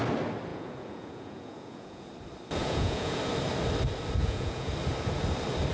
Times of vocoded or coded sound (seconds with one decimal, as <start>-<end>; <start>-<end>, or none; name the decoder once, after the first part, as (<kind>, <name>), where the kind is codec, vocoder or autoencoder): 0.5-2.1 (vocoder, Vocos); 2.6-3.2; 4.2-4.7